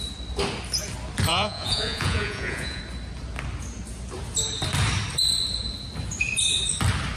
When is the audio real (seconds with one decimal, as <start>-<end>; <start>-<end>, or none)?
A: 0.0-1.3; 2.8-7.2